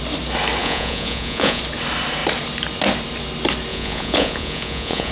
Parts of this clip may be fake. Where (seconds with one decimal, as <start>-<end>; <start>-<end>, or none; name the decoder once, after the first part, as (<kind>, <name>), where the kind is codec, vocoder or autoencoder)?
0.6-1.6 (vocoder, Vocos); 3.7-5.1